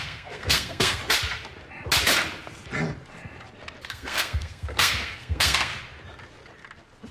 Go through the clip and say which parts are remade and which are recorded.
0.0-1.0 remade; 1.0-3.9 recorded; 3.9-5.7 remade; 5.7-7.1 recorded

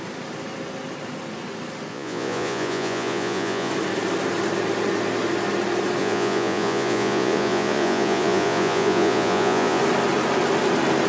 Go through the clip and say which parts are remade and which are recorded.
0.0-1.9 recorded; 1.9-3.7 remade; 3.7-6.0 recorded; 6.0-9.8 remade; 9.8-11.1 recorded

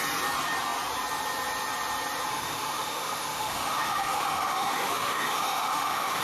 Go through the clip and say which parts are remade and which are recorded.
0.0-2.3 recorded; 2.3-6.2 remade

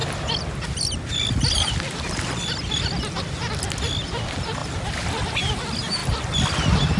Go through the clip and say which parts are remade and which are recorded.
0.0-7.0 recorded

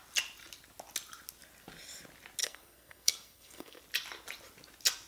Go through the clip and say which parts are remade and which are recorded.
0.0-2.4 recorded; 2.4-3.8 remade; 3.8-5.1 recorded

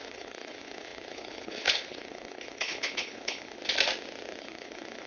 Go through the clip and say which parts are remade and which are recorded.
0.0-3.6 remade; 3.6-4.4 recorded; 4.4-5.1 remade

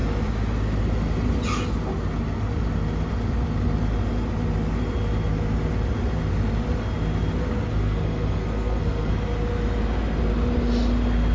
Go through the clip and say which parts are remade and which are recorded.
0.0-7.7 recorded; 7.7-9.1 remade; 9.1-11.3 recorded

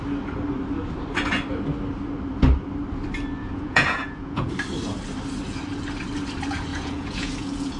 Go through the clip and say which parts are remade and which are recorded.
0.0-3.4 recorded; 3.4-4.5 remade; 4.5-6.7 recorded; 6.7-7.8 remade